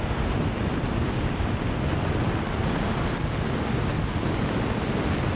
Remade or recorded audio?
recorded